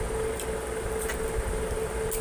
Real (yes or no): yes